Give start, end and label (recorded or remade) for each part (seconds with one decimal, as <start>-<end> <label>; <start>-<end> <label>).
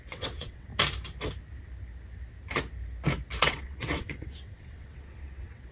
0.0-0.7 remade; 0.7-3.4 recorded; 3.4-5.7 remade